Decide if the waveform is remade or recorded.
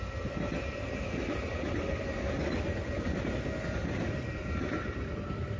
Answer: recorded